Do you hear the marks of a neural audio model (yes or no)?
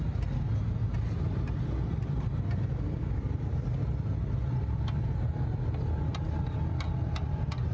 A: no